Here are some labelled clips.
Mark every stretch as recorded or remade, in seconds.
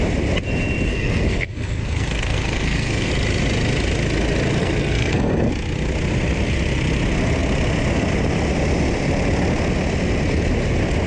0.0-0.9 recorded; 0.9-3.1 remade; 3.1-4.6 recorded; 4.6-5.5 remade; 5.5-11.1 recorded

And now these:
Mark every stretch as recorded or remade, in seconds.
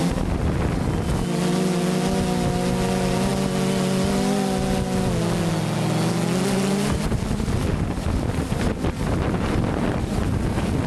0.0-10.9 recorded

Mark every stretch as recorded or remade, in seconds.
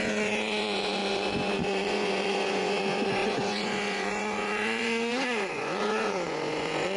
0.0-7.0 remade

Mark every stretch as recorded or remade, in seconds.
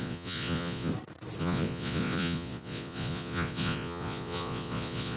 0.0-0.9 remade; 0.9-1.4 recorded; 1.4-5.2 remade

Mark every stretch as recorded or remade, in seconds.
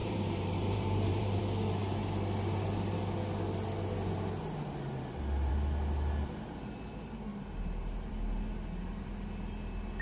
0.0-1.4 remade; 1.4-10.0 recorded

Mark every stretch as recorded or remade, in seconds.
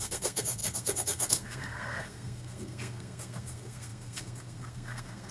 0.0-5.3 remade